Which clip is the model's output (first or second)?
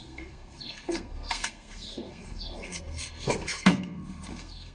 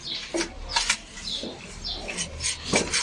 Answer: first